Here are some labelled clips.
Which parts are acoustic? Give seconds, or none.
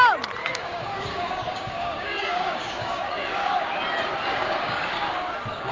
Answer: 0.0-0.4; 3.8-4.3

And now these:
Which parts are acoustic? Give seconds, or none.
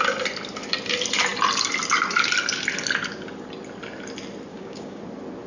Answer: 0.0-4.5; 5.0-5.5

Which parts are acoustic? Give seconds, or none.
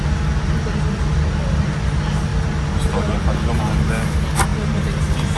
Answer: 0.0-5.4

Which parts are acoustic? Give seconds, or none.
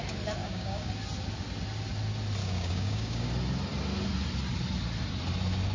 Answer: 0.0-0.4; 0.9-2.4; 3.3-5.7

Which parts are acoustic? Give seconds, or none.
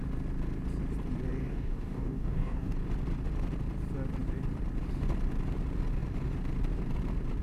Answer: 0.0-1.4; 2.7-7.4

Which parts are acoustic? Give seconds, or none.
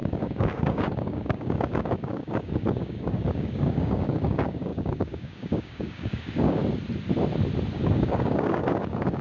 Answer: 6.6-7.7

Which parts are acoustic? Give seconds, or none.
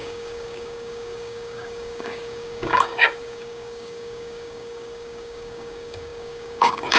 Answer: none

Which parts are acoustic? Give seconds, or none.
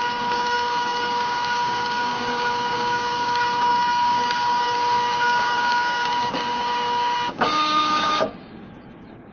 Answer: none